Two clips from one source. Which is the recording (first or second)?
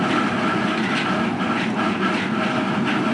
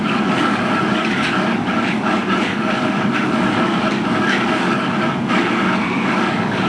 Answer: first